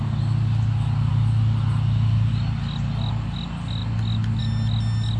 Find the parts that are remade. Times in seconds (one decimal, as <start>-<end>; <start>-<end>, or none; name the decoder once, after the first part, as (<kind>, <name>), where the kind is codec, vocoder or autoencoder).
none